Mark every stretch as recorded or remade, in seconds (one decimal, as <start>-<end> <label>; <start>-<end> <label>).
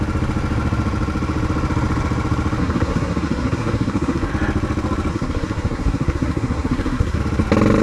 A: 0.0-2.6 recorded; 2.6-4.3 remade; 4.3-5.1 recorded; 5.1-7.2 remade; 7.2-7.8 recorded